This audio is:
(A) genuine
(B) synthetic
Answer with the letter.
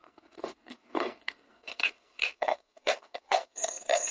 B